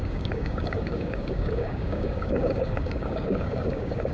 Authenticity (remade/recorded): remade